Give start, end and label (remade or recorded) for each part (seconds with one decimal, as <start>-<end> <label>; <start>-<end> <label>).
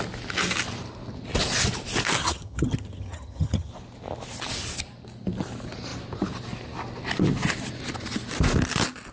0.0-2.2 recorded; 2.2-3.7 remade; 3.7-9.1 recorded